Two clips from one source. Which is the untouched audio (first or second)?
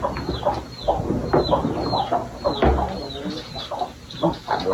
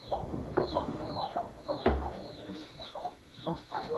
first